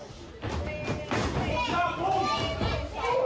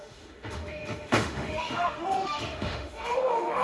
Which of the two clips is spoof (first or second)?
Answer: second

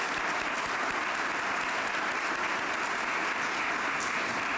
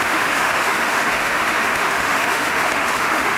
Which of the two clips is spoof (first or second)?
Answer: second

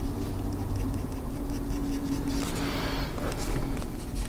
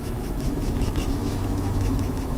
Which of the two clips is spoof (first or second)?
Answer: second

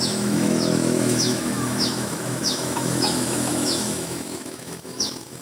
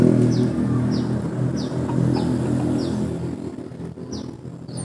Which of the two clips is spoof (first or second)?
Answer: first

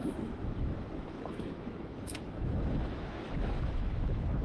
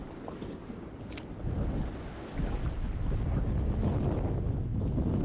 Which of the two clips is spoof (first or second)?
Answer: first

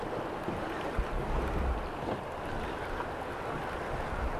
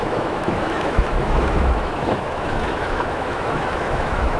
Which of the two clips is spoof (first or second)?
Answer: second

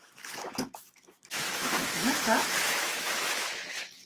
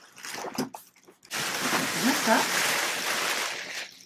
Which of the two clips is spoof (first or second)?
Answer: first